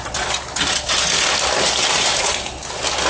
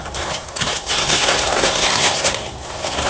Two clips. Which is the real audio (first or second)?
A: first